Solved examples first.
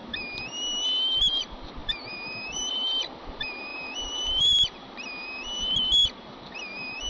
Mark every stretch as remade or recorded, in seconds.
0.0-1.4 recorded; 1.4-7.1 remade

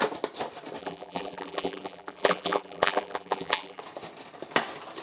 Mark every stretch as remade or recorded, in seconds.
0.0-0.8 recorded; 0.8-3.8 remade; 3.8-5.0 recorded

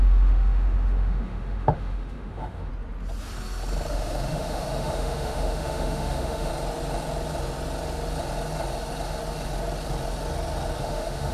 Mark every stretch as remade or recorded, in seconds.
0.0-2.7 remade; 2.7-3.9 recorded; 3.9-6.5 remade; 6.5-10.8 recorded; 10.8-11.3 remade